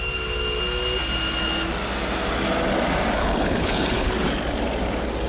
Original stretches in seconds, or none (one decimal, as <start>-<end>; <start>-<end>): 0.0-3.2; 4.1-5.3